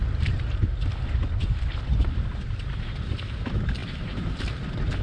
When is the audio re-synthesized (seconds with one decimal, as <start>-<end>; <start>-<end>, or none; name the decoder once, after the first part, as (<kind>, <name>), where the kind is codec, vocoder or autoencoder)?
3.8-4.4 (vocoder, BigVGAN v2)